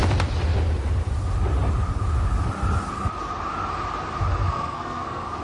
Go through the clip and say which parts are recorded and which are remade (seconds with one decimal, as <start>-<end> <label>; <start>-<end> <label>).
0.0-4.3 recorded; 4.3-5.4 remade